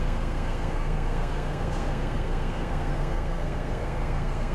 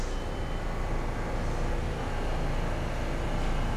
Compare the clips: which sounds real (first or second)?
second